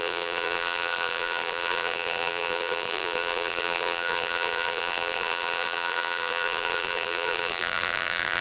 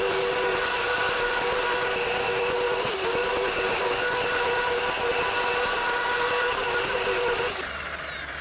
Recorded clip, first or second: second